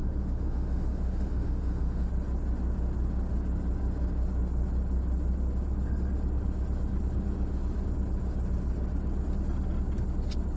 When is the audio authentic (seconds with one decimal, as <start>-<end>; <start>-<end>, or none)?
2.1-10.6